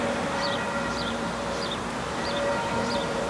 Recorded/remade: remade